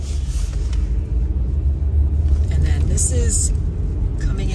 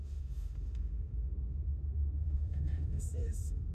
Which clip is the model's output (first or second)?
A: second